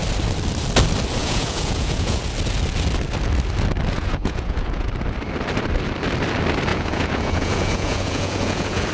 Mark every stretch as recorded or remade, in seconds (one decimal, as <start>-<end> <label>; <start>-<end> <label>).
0.0-1.2 recorded; 1.2-2.3 remade; 2.3-4.0 recorded; 4.0-4.9 remade; 4.9-6.7 recorded; 6.7-8.9 remade